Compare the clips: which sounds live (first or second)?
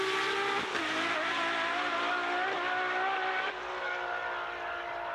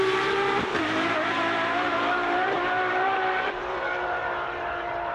first